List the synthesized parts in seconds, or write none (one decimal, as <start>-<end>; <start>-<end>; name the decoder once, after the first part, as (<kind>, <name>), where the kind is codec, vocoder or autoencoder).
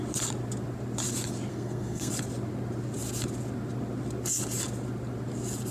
1.5-2.1 (codec, SNAC)